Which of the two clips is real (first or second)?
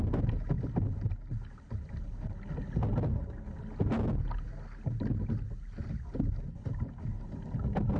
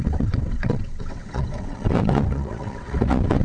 first